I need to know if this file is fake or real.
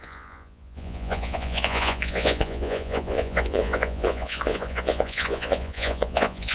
fake